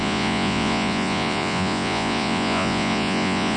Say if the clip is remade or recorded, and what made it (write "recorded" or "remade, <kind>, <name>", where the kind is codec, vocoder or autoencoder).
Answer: remade, vocoder, Vocos